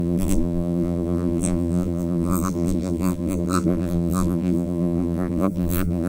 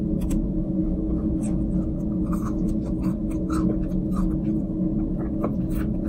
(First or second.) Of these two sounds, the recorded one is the second